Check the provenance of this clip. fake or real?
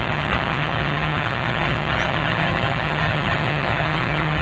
fake